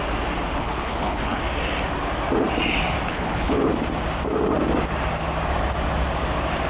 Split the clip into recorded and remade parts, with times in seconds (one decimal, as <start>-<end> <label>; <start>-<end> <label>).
0.0-0.5 recorded; 0.5-1.4 remade; 1.4-3.1 recorded; 3.1-3.6 remade; 3.6-6.7 recorded